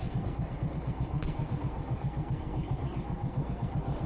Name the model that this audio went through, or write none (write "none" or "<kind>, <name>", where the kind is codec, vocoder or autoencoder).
codec, SNAC